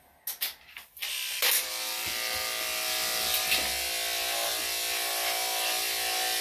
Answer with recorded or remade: recorded